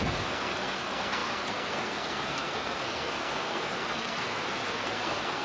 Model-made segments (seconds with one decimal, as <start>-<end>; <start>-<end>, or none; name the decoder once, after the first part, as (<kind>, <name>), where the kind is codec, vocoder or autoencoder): 0.0-5.4 (codec, SNAC)